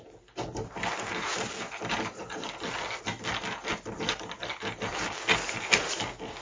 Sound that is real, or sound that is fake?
real